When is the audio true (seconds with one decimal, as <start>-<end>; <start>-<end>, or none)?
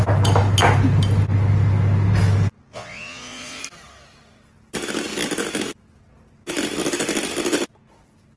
0.0-2.7; 3.6-8.4